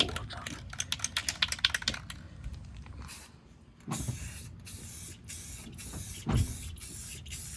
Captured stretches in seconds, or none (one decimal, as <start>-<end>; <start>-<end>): 0.0-7.6